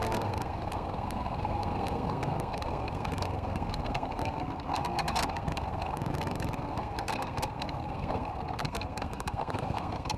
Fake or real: fake